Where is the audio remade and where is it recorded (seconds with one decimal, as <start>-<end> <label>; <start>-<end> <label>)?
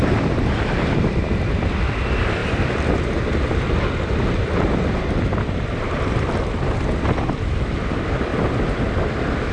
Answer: 0.0-9.5 remade